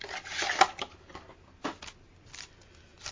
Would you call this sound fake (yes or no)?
no